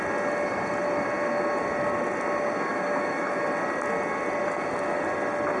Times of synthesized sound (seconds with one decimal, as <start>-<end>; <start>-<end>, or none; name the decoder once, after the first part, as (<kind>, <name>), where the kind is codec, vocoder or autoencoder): 2.7-3.4 (autoencoder, DAC-VAE)